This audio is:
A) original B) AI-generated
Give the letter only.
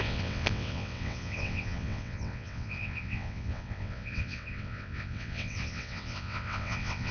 B